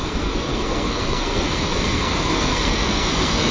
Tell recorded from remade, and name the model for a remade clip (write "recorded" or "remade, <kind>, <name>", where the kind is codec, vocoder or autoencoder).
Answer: remade, codec, SNAC